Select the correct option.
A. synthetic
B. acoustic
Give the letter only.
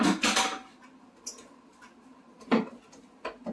B